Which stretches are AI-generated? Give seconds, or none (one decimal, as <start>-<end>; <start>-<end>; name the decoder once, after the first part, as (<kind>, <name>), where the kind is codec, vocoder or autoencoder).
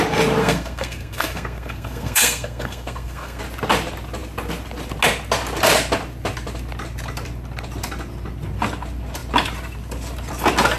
0.4-3.4 (codec, SNAC)